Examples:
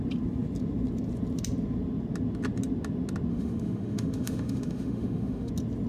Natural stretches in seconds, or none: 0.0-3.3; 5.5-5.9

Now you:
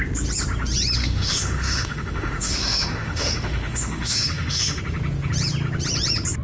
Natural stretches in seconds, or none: 0.0-1.0; 4.8-6.4

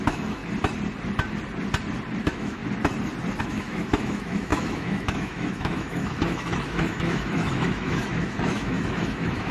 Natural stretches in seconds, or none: 0.4-2.2; 2.6-3.4

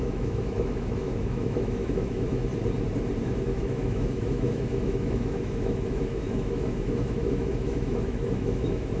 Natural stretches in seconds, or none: 2.5-3.2